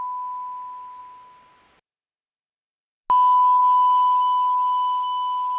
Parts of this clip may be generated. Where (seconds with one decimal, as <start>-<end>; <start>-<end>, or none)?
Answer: none